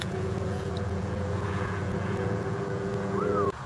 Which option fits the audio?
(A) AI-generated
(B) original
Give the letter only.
A